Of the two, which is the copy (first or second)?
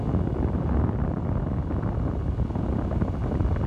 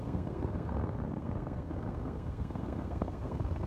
second